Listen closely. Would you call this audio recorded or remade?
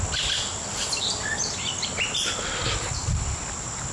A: recorded